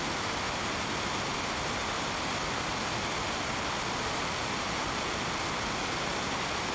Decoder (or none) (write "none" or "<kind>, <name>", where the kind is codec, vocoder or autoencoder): none